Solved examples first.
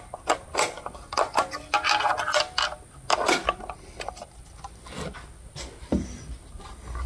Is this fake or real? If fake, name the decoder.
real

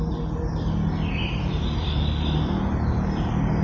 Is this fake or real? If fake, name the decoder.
real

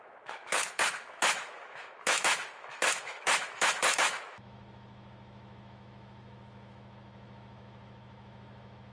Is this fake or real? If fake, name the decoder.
fake, autoencoder, DAC-VAE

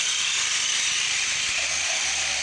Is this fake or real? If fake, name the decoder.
fake, vocoder, BigVGAN v2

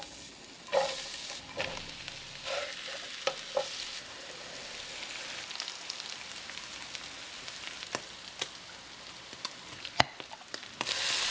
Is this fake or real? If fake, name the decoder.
real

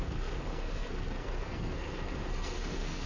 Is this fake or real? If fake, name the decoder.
fake, codec, SNAC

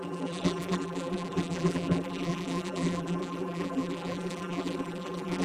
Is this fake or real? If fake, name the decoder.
fake, vocoder, BigVGAN v2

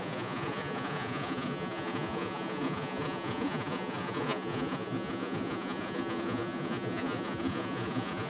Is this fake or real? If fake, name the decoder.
fake, vocoder, Vocos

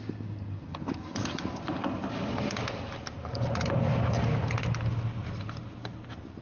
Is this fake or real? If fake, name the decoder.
real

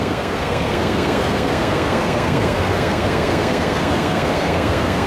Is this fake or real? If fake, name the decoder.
fake, codec, SNAC